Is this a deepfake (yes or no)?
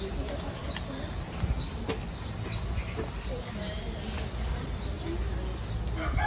no